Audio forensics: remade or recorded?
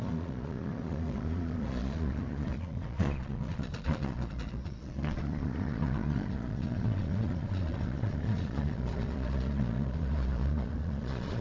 remade